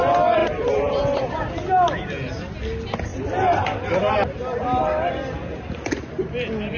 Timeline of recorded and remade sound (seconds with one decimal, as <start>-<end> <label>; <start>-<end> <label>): 0.0-0.4 recorded; 0.4-1.3 remade; 1.3-3.1 recorded; 3.1-3.9 remade; 3.9-6.8 recorded